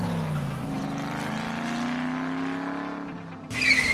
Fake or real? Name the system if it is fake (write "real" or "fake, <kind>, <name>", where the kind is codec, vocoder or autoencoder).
real